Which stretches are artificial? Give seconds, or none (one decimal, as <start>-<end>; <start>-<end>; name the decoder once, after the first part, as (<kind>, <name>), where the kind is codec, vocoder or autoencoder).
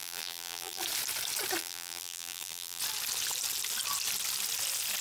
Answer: 0.0-0.8 (vocoder, BigVGAN v2); 1.6-2.8